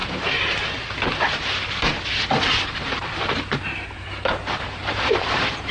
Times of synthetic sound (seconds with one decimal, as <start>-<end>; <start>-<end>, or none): 2.5-5.7